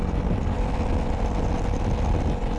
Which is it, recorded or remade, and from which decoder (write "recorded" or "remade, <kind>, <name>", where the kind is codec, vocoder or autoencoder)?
recorded